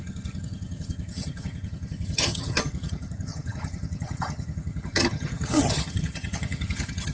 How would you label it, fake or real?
fake